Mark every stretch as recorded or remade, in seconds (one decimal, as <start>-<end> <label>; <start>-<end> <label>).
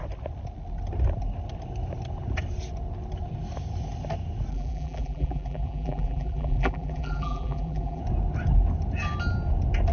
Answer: 0.0-4.5 recorded; 4.5-8.0 remade; 8.0-9.9 recorded